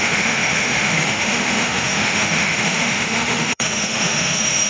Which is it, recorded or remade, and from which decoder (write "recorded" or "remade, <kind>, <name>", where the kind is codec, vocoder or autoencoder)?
remade, autoencoder, DAC-VAE